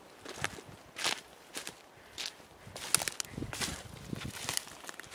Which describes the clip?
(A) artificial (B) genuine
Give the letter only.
B